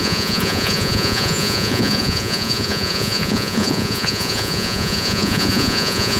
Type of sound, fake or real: fake